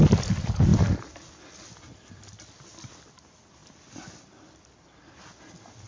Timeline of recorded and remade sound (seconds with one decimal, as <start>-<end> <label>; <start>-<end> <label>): 0.0-5.9 recorded

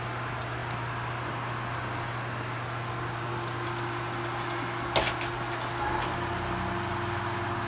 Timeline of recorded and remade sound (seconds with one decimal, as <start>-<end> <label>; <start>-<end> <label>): 0.0-7.7 recorded

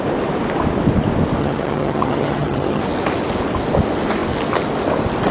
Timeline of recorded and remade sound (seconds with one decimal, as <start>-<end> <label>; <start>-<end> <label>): 0.0-1.4 recorded; 1.4-2.8 remade; 2.8-5.3 recorded